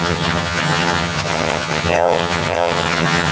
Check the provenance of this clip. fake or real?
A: fake